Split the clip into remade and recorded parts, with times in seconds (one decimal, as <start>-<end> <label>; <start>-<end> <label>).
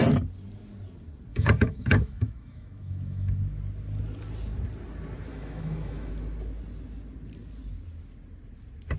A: 0.0-1.3 recorded; 1.3-3.3 remade; 3.3-5.3 recorded; 5.3-6.1 remade; 6.1-9.0 recorded